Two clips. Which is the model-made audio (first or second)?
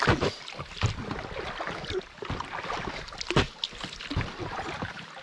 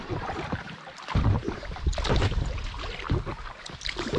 second